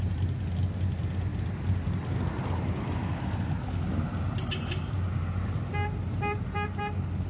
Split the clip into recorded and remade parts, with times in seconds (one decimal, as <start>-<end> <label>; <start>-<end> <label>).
0.0-7.3 recorded